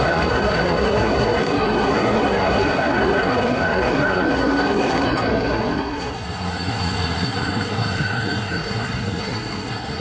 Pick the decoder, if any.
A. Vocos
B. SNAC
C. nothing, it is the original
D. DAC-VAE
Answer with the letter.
B